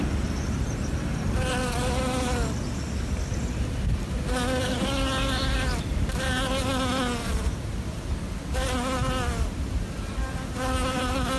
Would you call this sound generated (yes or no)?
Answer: no